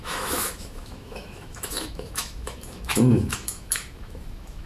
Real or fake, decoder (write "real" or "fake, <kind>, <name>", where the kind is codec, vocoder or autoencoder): fake, autoencoder, DAC-VAE